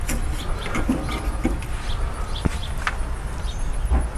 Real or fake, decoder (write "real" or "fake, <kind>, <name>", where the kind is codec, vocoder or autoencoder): real